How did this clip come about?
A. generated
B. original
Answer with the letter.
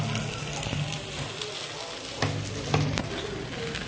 B